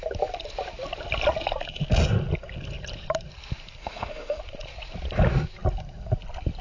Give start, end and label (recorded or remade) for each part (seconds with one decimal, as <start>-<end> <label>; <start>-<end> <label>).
0.0-3.8 recorded; 3.8-4.4 remade; 4.4-6.6 recorded